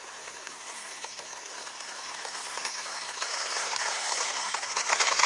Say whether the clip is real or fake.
fake